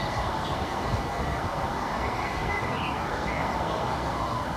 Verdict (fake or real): fake